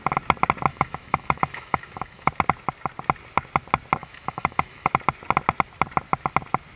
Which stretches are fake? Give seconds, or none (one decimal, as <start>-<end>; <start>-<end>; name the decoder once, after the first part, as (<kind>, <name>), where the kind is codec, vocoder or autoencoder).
0.7-2.3 (autoencoder, DAC-VAE); 4.0-4.9